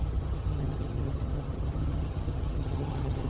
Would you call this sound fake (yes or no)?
yes